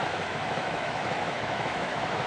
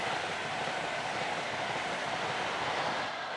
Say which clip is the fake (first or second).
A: first